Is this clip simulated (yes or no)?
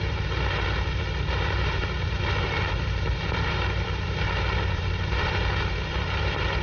yes